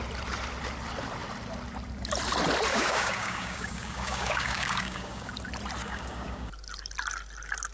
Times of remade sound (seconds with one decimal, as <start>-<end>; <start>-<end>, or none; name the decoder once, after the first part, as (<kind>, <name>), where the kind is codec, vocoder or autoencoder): 2.7-5.3 (codec, DAC); 5.8-6.5